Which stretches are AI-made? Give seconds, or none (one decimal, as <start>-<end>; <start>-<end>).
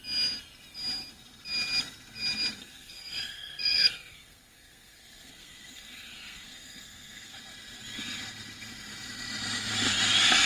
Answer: 2.6-7.4